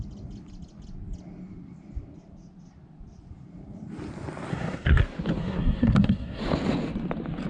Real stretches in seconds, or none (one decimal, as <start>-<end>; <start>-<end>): 0.0-4.5; 5.0-5.4; 6.4-7.5